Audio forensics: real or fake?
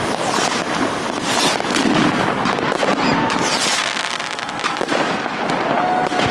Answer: real